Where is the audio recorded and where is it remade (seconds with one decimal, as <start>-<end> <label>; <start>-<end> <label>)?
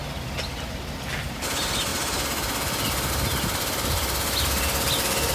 0.0-5.3 recorded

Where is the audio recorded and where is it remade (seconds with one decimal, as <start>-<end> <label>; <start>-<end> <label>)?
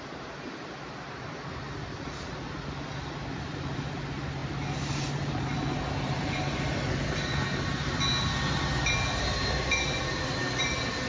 0.0-11.1 recorded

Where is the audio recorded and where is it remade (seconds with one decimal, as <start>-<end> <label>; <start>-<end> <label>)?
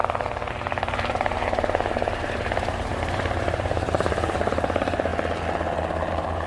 0.0-0.5 recorded; 0.5-5.1 remade; 5.1-6.1 recorded; 6.1-6.5 remade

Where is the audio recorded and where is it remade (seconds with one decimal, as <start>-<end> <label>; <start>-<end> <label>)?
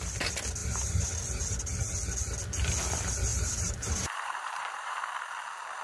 0.0-0.6 recorded; 0.6-1.1 remade; 1.1-3.3 recorded; 3.3-5.1 remade; 5.1-5.8 recorded